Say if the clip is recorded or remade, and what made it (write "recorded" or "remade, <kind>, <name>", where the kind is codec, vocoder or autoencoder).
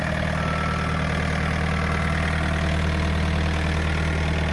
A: recorded